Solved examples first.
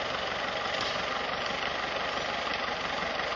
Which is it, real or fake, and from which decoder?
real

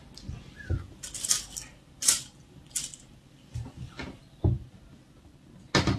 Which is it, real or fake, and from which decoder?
real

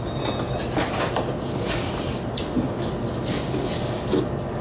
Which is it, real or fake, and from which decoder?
real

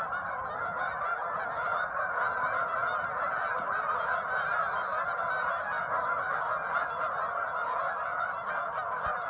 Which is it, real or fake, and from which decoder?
real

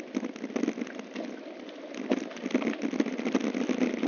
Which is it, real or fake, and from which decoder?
real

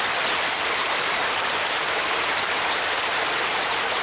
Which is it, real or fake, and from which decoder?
real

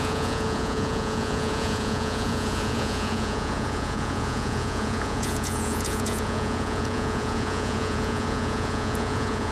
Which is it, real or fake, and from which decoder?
fake, vocoder, Vocos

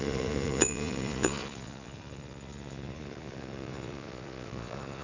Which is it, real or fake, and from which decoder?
fake, vocoder, Vocos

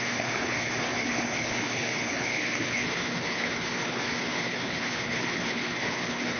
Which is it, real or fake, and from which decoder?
fake, codec, HILCodec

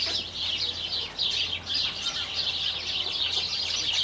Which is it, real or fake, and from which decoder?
real